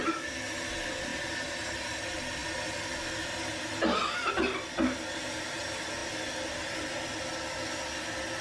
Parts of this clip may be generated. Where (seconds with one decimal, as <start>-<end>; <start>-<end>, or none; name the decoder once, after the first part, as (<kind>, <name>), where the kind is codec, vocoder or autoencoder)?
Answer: none